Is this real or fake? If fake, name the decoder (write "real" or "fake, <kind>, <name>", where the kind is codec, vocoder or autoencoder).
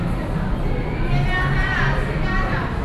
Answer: real